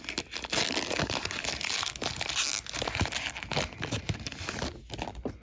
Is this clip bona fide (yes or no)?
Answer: yes